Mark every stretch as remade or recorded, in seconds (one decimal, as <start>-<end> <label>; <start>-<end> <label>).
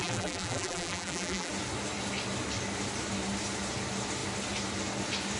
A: 0.0-1.5 remade; 1.5-5.4 recorded